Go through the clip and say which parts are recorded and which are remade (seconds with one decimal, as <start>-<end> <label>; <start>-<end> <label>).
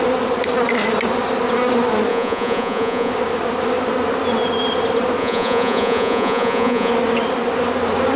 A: 0.0-2.1 recorded; 2.1-3.1 remade; 3.1-5.2 recorded; 5.2-6.9 remade; 6.9-8.2 recorded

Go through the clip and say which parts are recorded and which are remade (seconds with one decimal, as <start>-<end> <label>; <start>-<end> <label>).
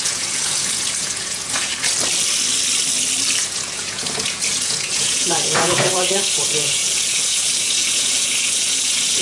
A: 0.0-1.7 remade; 1.7-3.4 recorded; 3.4-9.2 remade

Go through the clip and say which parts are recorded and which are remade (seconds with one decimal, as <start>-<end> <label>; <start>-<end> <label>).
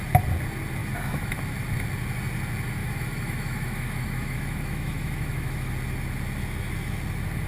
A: 0.0-0.8 recorded; 0.8-1.4 remade; 1.4-2.8 recorded; 2.8-5.7 remade; 5.7-7.5 recorded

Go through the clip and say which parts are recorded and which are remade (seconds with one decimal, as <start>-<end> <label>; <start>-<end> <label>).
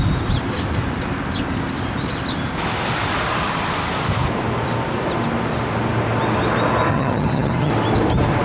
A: 0.0-6.9 recorded; 6.9-7.7 remade; 7.7-8.4 recorded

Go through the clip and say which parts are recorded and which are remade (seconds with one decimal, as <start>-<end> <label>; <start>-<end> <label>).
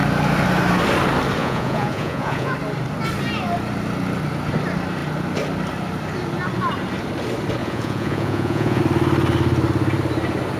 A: 0.0-1.4 recorded; 1.4-2.5 remade; 2.5-7.6 recorded; 7.6-8.8 remade; 8.8-10.6 recorded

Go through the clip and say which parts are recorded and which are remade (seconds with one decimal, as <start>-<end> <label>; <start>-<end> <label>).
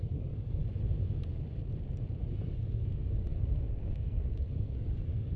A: 0.0-0.6 remade; 0.6-2.2 recorded; 2.2-5.4 remade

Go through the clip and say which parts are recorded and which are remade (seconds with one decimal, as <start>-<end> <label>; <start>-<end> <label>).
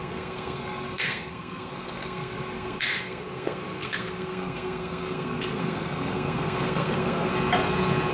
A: 0.0-7.3 remade; 7.3-8.1 recorded